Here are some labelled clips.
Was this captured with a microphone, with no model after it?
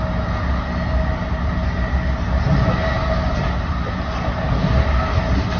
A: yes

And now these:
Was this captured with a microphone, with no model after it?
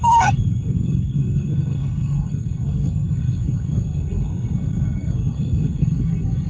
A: no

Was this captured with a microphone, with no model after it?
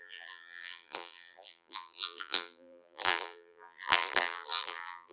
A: no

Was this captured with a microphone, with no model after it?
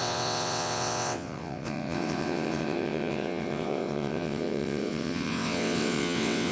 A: no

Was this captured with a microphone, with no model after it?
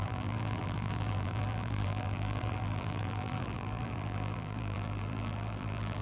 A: no